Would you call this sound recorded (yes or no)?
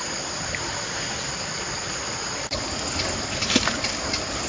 yes